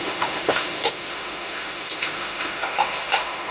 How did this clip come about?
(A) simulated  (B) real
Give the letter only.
A